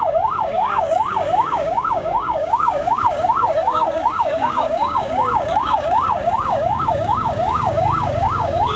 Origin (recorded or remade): remade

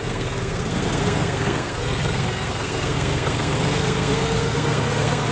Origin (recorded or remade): remade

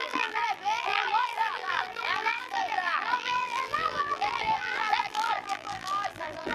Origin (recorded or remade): remade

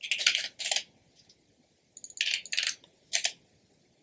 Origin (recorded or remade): recorded